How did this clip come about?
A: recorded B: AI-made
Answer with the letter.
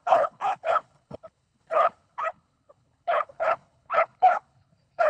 B